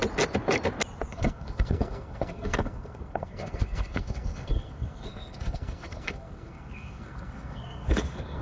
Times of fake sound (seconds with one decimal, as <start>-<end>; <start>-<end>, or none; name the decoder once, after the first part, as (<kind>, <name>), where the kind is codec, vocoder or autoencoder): 1.1-8.4 (codec, SNAC)